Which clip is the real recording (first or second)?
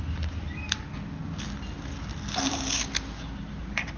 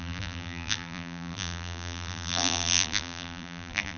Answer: first